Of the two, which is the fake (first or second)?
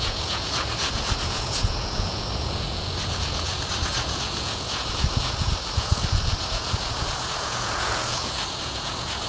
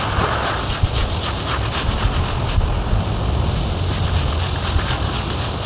first